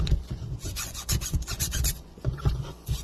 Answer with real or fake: fake